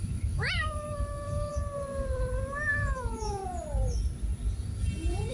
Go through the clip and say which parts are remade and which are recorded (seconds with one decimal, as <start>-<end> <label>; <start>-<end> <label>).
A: 0.0-1.5 remade; 1.5-2.7 recorded; 2.7-3.4 remade; 3.4-5.3 recorded